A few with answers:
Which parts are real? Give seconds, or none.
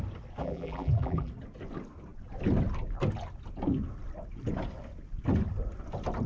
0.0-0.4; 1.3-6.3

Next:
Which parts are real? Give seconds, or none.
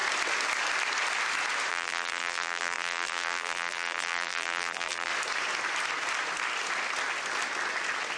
0.0-1.7; 5.1-8.2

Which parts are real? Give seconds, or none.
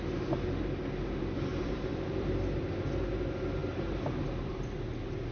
0.0-1.5; 2.7-5.3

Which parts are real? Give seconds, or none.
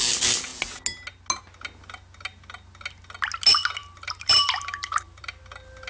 0.0-3.8; 5.4-5.9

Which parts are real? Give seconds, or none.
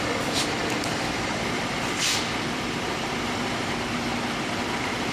0.0-0.6; 3.7-5.1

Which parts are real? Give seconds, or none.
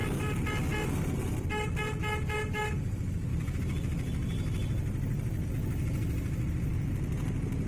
0.0-3.3; 5.5-7.7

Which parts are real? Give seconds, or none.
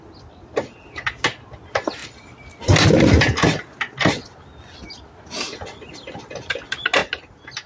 0.0-7.7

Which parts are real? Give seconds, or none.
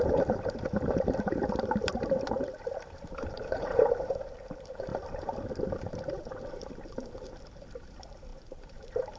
none